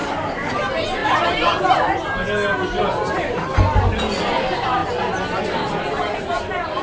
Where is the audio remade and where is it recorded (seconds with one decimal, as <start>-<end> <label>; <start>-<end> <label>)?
0.0-0.5 remade; 0.5-6.8 recorded